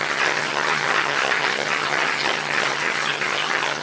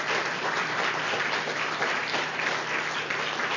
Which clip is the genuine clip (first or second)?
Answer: second